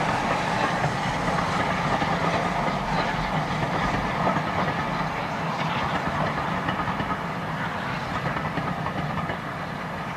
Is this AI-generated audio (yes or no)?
no